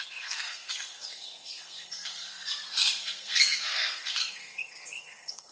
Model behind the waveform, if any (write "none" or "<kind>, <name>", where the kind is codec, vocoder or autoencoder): codec, SNAC